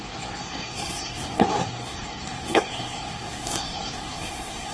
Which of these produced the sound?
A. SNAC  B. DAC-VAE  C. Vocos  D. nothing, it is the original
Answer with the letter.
A